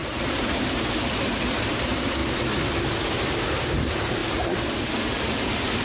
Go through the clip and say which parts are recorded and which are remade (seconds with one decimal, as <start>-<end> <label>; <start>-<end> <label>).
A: 0.0-2.2 remade; 2.2-3.2 recorded; 3.2-5.8 remade

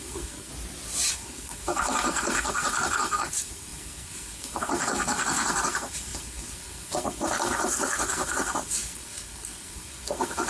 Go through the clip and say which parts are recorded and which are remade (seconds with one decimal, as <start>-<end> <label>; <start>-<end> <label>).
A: 0.0-0.5 remade; 0.5-1.1 recorded; 1.1-10.5 remade